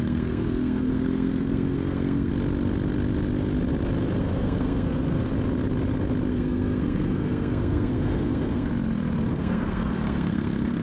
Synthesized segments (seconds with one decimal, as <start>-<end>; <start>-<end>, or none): 0.0-2.3; 4.2-5.3; 6.3-8.7; 9.3-10.8

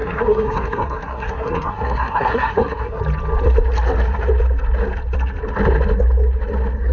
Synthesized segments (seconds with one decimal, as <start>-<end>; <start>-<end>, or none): 0.0-3.0

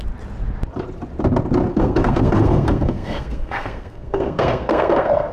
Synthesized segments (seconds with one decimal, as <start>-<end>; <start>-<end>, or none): 1.7-5.3

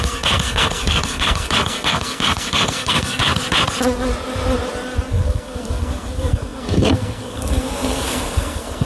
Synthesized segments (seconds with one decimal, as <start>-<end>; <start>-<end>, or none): 0.0-3.2; 5.1-8.9

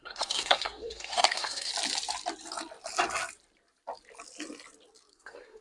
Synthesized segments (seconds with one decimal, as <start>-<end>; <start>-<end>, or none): 0.0-1.7; 5.1-5.6

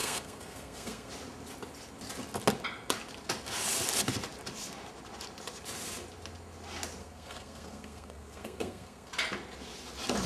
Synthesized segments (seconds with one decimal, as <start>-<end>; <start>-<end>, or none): 0.0-1.1; 7.0-9.1

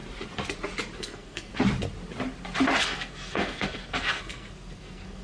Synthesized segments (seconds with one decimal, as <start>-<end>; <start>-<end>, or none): 1.0-1.5; 2.8-5.2

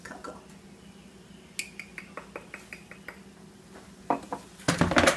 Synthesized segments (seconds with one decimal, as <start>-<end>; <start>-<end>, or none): none